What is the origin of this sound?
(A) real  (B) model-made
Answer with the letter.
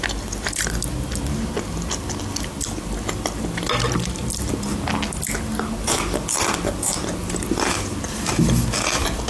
A